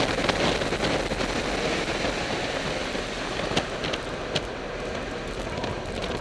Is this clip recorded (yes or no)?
yes